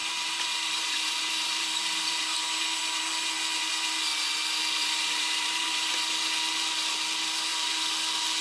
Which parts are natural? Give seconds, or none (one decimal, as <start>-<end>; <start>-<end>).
2.4-4.8; 6.0-8.4